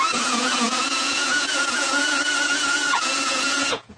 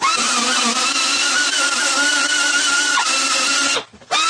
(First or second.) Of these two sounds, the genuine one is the second